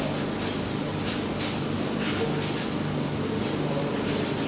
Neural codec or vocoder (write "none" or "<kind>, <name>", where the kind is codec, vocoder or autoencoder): none